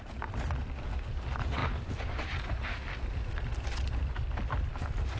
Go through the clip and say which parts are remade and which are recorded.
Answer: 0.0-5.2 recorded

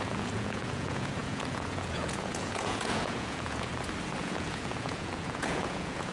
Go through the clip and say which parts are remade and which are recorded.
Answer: 0.0-3.7 remade; 3.7-4.2 recorded; 4.2-6.1 remade